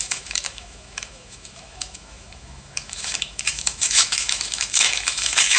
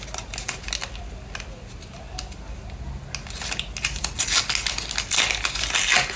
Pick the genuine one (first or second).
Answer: second